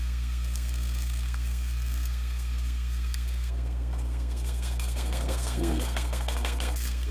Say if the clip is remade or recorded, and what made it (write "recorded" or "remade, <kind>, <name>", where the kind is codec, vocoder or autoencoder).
remade, codec, SNAC